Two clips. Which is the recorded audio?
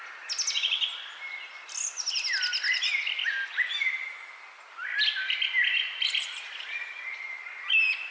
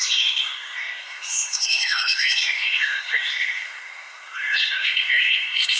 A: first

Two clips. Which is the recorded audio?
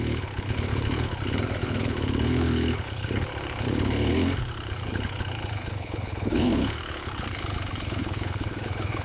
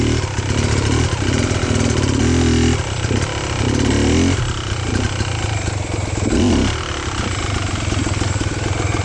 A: second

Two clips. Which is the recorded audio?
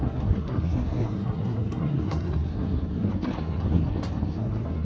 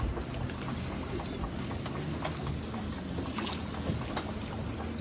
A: second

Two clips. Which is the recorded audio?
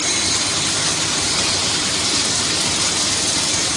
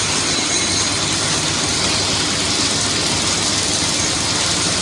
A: second